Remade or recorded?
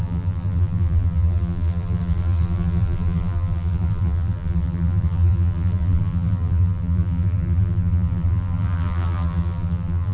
remade